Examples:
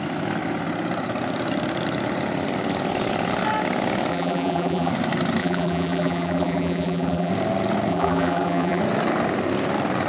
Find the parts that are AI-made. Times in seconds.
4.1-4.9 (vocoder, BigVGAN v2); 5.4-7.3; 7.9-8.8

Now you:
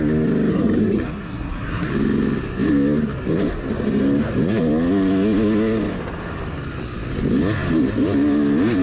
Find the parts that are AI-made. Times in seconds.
0.5-1.9 (codec, SNAC)

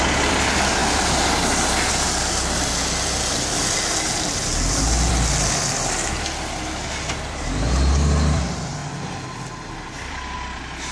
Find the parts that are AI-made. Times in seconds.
none

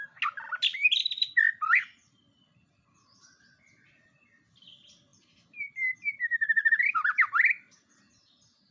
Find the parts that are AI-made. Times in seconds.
none

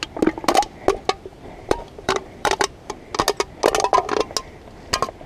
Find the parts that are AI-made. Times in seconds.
1.3-3.1 (vocoder, BigVGAN v2)

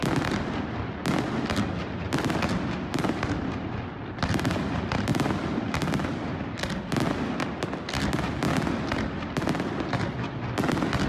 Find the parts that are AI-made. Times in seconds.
none